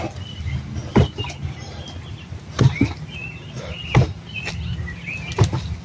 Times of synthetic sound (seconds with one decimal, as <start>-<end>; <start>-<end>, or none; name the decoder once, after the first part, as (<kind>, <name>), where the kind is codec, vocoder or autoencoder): none